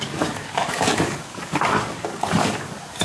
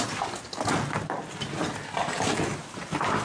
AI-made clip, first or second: first